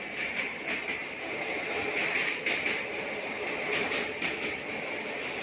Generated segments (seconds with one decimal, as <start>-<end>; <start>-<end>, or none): none